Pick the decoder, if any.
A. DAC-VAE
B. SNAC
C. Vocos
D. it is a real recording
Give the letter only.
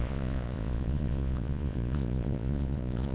C